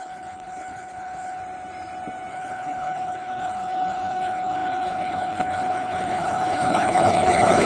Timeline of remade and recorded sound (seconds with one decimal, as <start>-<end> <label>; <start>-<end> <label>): 0.0-1.4 remade; 1.4-2.3 recorded; 2.3-7.7 remade